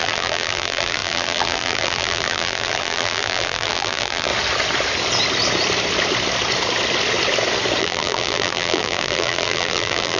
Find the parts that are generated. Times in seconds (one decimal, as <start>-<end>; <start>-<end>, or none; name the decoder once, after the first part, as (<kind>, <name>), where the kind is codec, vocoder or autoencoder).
0.0-4.3 (vocoder, BigVGAN v2); 7.8-10.2